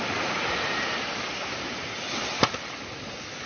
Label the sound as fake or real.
real